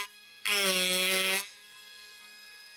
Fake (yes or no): yes